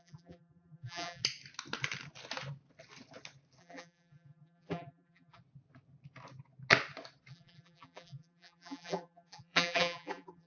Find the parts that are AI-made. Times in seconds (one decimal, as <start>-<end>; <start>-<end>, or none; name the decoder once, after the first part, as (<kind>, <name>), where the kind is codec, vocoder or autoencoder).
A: 0.0-1.2 (vocoder, BigVGAN v2); 3.6-5.4; 7.3-10.5